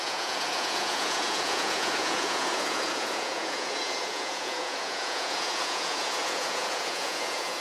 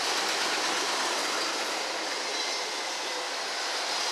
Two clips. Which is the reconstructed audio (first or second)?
first